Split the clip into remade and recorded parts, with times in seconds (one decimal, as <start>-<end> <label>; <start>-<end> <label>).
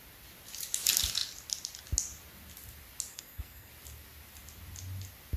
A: 0.0-3.1 recorded; 3.1-3.7 remade; 3.7-5.4 recorded